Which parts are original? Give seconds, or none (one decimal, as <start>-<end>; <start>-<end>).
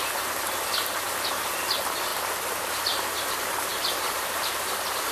0.0-3.7